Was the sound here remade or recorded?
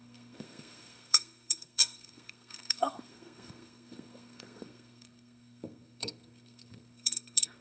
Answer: remade